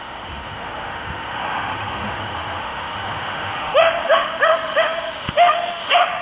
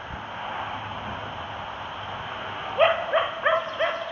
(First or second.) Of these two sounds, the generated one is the first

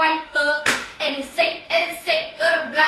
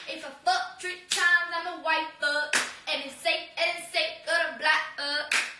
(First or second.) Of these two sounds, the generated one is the first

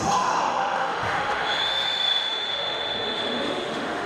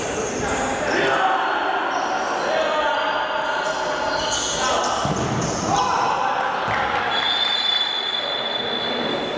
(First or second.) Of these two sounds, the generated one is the first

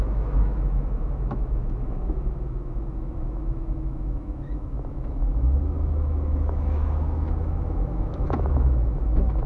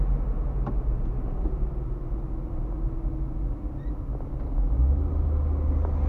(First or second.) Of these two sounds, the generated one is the first